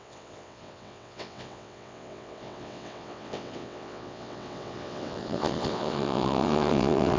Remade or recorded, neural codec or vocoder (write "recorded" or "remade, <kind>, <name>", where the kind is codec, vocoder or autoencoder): remade, vocoder, WaveNeXt